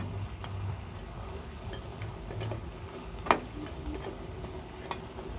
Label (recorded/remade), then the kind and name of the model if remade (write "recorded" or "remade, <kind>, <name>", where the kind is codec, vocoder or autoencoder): recorded